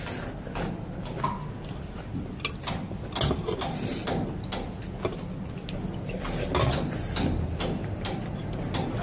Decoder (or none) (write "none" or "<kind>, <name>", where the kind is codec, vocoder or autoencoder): none